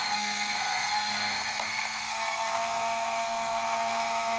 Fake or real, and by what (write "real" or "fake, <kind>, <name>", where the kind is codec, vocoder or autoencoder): fake, codec, SNAC